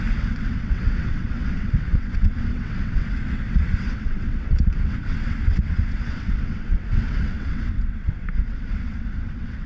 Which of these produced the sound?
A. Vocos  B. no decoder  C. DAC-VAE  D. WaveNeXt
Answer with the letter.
D